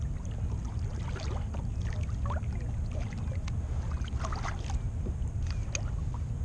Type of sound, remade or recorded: recorded